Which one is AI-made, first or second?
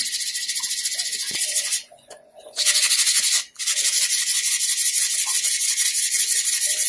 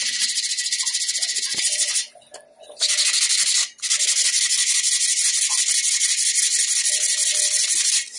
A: first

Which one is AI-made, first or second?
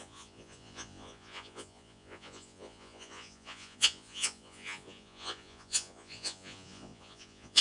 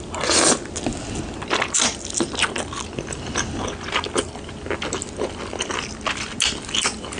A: first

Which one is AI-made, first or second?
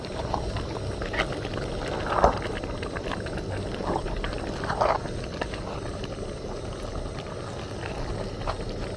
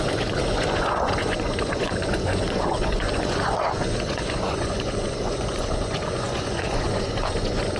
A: second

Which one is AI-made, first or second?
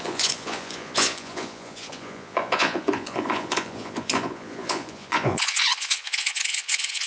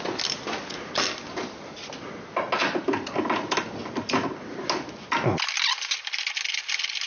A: first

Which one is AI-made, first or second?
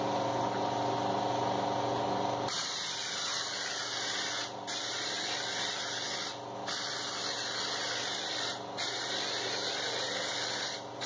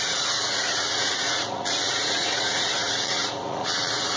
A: second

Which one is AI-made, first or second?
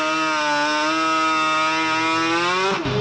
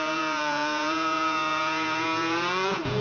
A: second